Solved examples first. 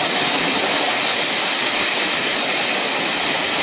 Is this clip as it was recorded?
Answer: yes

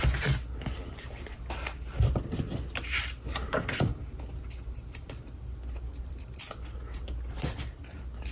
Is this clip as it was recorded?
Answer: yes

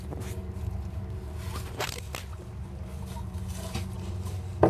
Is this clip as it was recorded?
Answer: yes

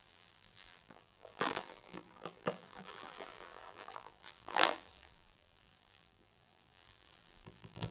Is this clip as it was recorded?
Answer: no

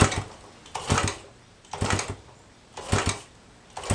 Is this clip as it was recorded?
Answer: yes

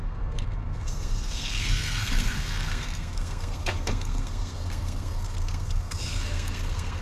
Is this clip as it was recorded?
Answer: no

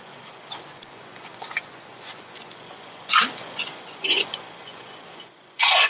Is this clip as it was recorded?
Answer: no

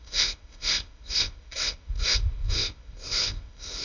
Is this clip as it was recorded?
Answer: no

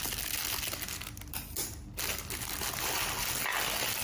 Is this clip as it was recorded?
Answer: yes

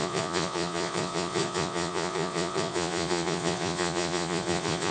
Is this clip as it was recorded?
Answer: no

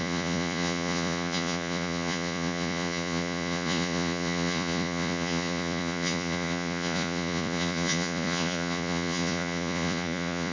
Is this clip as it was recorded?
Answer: no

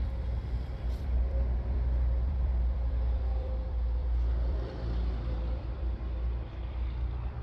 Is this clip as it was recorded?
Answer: no